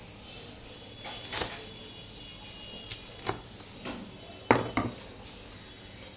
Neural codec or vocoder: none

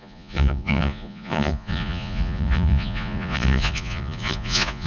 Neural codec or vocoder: vocoder, Vocos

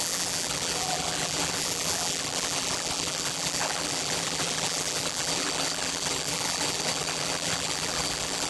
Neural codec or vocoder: vocoder, BigVGAN v2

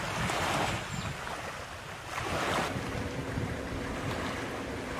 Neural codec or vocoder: none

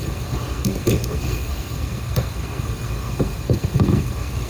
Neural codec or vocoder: codec, SNAC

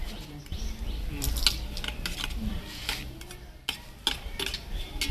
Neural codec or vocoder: none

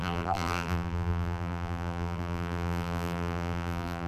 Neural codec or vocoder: vocoder, BigVGAN v2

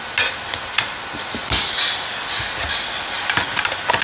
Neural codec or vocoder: none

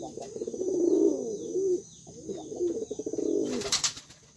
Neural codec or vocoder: none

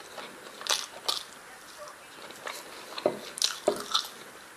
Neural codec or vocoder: none